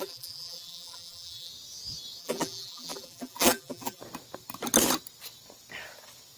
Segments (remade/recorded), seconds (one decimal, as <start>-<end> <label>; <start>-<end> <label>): 0.0-1.5 remade; 1.5-2.2 recorded; 2.2-4.0 remade; 4.0-6.4 recorded

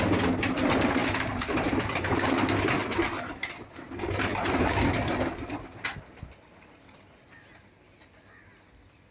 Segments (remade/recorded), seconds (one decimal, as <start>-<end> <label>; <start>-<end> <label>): 0.0-1.0 recorded; 1.0-2.3 remade; 2.3-4.3 recorded; 4.3-6.0 remade; 6.0-9.1 recorded